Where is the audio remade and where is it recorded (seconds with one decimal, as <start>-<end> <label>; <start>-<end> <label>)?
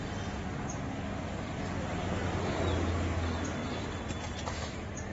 0.0-3.6 recorded; 3.6-5.1 remade